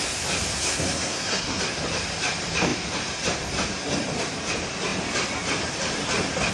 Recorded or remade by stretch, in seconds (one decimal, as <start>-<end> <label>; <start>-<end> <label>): 0.0-0.5 recorded; 0.5-1.6 remade; 1.6-6.5 recorded